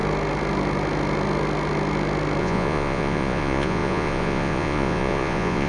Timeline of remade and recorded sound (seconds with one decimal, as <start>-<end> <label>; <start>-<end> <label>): 0.0-2.4 recorded; 2.4-5.7 remade